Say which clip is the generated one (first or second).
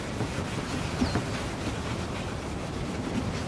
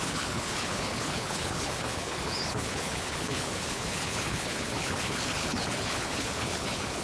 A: second